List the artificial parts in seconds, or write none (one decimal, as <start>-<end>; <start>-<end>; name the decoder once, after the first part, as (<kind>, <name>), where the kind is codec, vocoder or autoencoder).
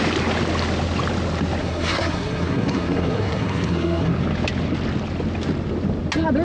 1.6-4.1 (codec, SNAC)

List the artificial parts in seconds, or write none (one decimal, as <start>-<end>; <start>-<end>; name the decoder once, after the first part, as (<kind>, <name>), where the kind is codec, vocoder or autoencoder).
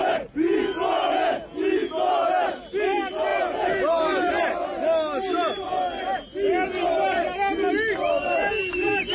0.0-2.3 (vocoder, Vocos); 3.3-4.3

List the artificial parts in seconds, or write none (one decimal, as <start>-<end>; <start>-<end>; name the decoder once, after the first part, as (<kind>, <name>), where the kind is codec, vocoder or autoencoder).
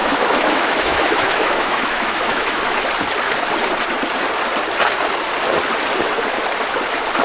0.0-2.8 (autoencoder, DAC-VAE)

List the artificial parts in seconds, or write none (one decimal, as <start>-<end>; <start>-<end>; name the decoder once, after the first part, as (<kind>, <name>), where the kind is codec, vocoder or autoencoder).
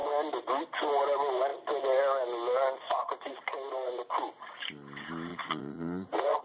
5.3-6.4 (vocoder, Vocos)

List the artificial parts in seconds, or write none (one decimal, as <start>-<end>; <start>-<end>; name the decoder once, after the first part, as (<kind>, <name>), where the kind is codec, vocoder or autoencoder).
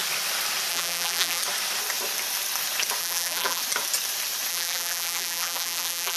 0.7-1.4 (vocoder, BigVGAN v2); 3.0-3.6; 4.5-6.2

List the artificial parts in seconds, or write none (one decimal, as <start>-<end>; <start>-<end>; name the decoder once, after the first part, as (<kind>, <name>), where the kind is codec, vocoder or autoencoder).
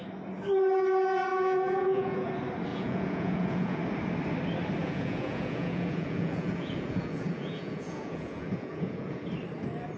1.3-2.3 (vocoder, Vocos); 2.7-3.8; 4.8-9.2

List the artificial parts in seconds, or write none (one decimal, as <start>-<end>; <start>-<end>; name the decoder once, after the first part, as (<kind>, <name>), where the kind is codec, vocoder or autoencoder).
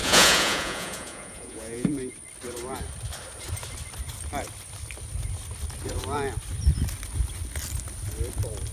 0.0-2.0 (vocoder, Vocos)